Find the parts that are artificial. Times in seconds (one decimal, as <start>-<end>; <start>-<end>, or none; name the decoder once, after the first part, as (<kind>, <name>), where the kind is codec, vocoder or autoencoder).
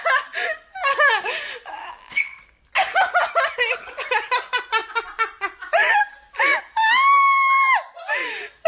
1.8-2.6 (codec, DAC)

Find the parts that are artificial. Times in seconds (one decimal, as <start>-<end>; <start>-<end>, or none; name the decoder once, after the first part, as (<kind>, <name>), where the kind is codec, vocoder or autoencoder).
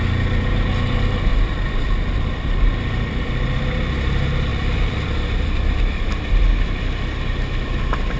1.3-3.3 (vocoder, BigVGAN v2); 4.5-6.1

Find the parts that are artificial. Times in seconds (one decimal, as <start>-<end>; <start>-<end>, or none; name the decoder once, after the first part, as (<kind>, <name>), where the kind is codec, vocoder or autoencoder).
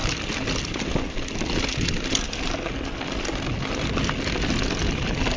none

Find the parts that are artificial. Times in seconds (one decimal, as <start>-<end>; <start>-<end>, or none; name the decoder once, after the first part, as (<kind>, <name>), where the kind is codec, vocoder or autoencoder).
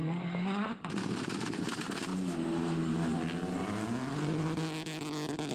0.7-2.1 (vocoder, BigVGAN v2)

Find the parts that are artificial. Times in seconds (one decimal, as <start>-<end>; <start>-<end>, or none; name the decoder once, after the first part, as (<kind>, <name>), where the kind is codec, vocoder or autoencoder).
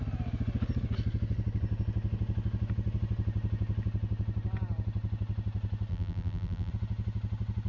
5.9-6.7 (vocoder, BigVGAN v2)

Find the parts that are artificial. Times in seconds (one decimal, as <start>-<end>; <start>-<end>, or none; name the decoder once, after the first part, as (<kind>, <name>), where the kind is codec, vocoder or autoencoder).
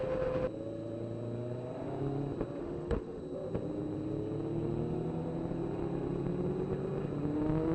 2.6-3.2 (autoencoder, DAC-VAE)